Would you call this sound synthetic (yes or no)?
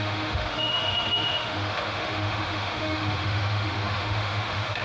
yes